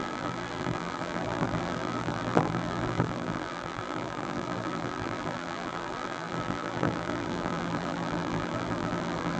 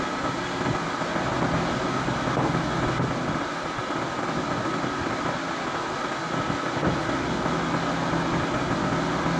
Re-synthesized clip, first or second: first